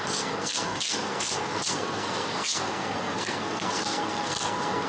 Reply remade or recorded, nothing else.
remade